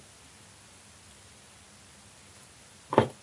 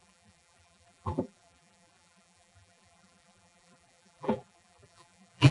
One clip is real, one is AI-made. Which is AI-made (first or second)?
second